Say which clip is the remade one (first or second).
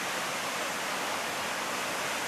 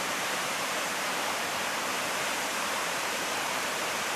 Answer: second